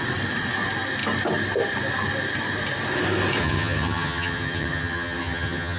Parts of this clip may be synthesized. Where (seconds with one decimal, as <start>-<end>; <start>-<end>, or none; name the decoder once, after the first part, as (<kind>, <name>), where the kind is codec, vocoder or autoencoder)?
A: 3.4-5.8 (vocoder, HiFi-GAN)